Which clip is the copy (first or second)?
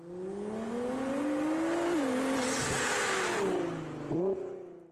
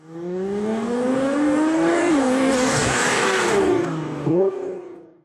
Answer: second